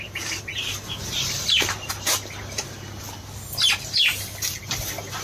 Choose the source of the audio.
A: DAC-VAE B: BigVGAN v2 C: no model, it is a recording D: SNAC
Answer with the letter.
C